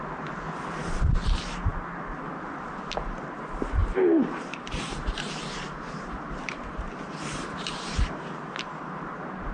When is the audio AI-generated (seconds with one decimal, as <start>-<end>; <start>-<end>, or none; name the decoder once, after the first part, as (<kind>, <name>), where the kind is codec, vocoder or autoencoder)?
3.8-8.4 (vocoder, BigVGAN v2)